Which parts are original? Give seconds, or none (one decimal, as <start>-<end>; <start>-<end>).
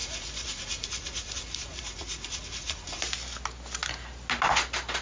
3.0-5.0